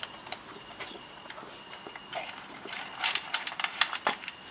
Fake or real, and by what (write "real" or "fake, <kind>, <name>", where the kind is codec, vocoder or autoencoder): fake, vocoder, BigVGAN v2